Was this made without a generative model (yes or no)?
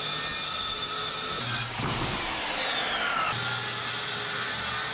yes